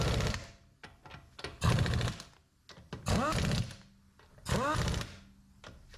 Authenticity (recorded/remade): recorded